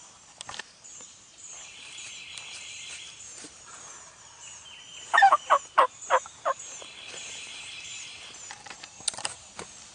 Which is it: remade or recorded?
remade